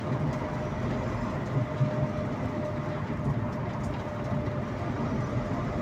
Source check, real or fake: real